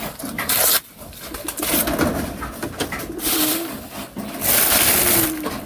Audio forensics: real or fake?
real